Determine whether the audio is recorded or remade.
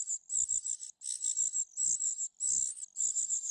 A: recorded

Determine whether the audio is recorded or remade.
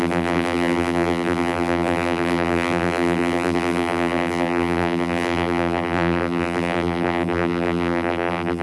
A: remade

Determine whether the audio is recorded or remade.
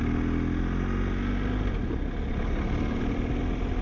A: recorded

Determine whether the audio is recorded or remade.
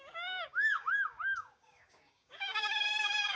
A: remade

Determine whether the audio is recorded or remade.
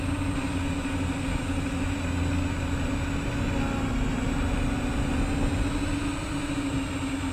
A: recorded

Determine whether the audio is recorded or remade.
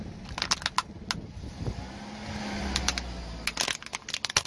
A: recorded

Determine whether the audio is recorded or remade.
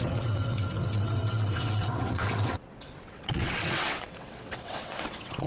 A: remade